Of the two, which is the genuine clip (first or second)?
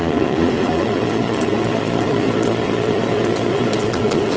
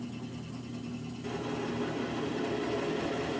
second